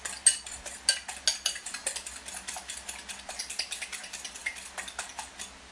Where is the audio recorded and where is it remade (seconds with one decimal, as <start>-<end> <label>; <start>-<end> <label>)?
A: 0.0-5.7 recorded